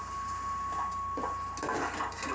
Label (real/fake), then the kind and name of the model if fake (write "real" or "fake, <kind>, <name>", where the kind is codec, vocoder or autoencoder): real